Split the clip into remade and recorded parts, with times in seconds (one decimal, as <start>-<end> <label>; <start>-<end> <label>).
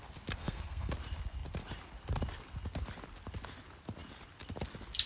0.0-0.4 recorded; 0.4-0.9 remade; 0.9-5.1 recorded